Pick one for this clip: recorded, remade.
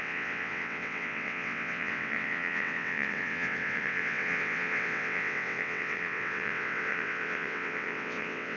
remade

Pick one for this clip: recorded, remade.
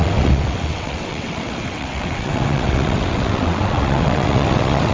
remade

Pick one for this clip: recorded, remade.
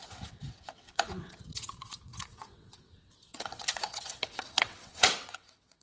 remade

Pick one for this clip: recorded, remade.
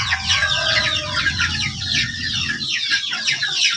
remade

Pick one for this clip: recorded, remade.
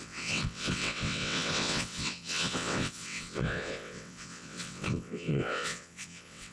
remade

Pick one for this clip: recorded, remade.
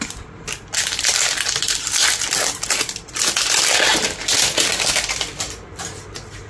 recorded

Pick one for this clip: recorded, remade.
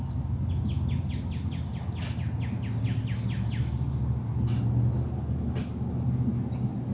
recorded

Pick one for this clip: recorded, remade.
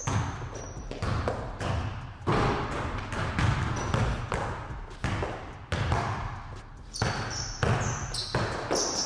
recorded